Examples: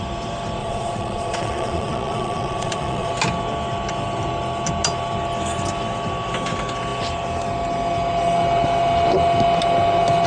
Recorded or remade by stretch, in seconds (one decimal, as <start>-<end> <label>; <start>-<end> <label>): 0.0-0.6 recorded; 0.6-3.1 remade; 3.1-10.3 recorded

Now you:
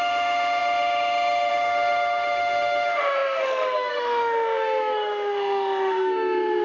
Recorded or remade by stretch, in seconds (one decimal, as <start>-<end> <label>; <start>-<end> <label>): 0.0-6.6 remade

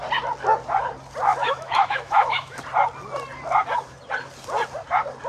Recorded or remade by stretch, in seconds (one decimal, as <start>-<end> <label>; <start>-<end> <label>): 0.0-1.4 recorded; 1.4-2.6 remade; 2.6-5.3 recorded